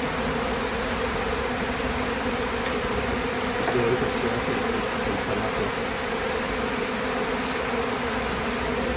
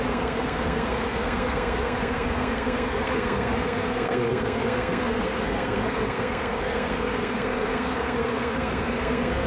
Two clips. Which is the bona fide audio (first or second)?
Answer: first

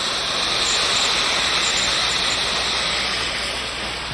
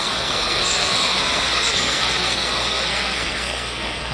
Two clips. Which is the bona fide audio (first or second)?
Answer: first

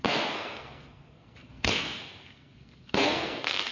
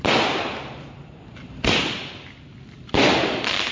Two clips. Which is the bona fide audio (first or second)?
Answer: second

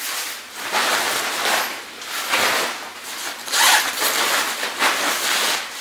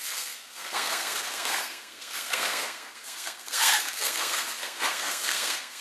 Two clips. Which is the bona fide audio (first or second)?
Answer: first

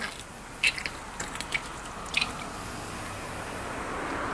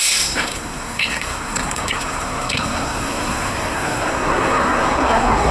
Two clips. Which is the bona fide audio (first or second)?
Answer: first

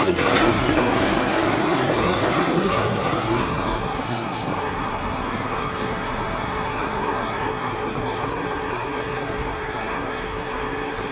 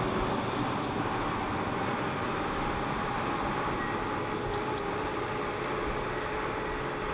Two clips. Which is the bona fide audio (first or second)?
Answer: second